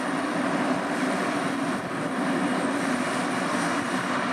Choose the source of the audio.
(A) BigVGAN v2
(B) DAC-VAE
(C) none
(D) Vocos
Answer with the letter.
C